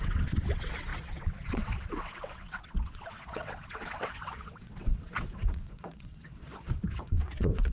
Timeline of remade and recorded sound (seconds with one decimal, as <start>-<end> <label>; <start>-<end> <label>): 0.0-7.7 remade